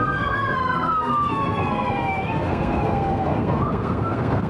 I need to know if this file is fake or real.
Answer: fake